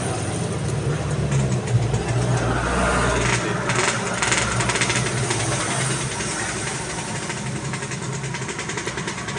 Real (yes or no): yes